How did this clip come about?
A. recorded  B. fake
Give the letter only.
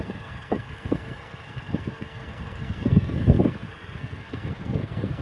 B